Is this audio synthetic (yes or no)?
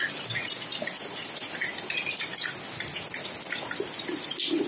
no